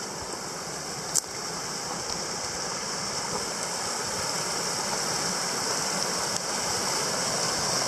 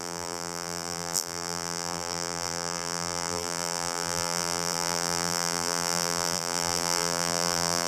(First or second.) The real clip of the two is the first